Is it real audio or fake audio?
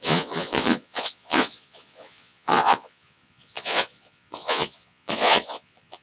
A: fake